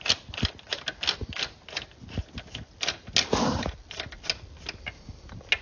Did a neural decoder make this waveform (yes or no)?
no